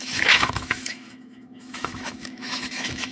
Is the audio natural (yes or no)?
no